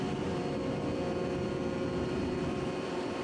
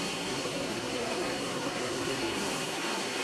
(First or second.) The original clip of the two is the first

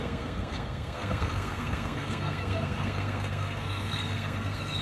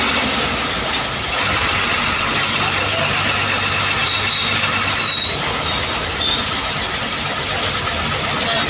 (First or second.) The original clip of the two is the second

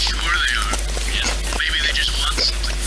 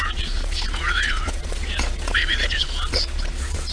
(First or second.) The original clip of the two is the first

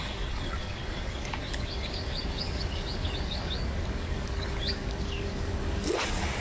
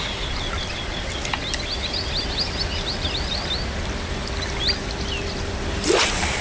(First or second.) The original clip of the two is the second